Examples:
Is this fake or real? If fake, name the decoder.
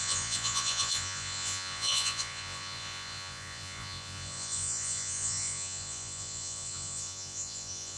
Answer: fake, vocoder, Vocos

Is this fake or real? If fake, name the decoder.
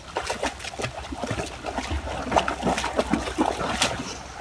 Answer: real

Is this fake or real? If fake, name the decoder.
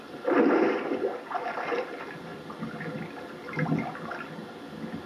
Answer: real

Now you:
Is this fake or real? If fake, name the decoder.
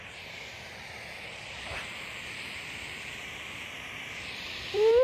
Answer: fake, vocoder, BigVGAN v2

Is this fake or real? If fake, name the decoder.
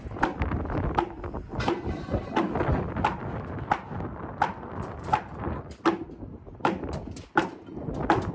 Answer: real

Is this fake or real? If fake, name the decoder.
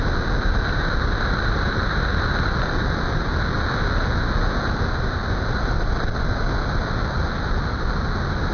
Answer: real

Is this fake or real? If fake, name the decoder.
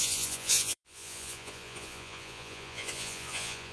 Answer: fake, vocoder, Vocos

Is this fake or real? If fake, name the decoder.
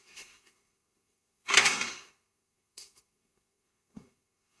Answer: fake, codec, SNAC